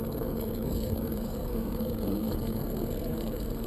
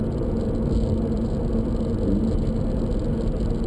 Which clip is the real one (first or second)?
second